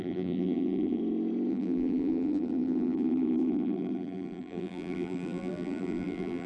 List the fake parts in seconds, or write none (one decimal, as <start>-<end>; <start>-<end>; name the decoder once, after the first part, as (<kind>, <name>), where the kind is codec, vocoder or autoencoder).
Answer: 0.0-1.0 (vocoder, BigVGAN v2); 1.5-6.5